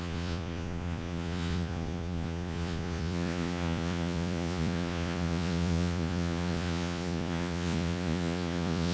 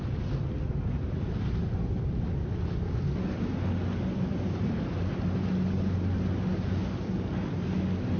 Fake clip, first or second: first